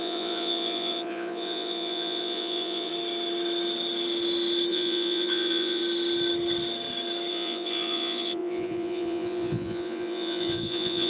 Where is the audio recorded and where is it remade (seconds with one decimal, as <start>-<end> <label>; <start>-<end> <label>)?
0.0-2.9 remade; 2.9-4.7 recorded; 4.7-5.8 remade; 5.8-7.3 recorded; 7.3-11.1 remade